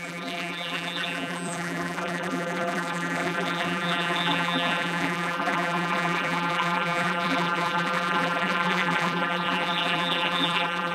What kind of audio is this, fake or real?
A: fake